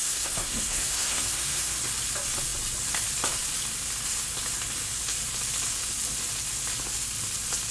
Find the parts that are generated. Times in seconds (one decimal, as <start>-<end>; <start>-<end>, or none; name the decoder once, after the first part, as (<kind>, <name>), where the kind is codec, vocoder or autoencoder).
0.0-1.8 (codec, SNAC)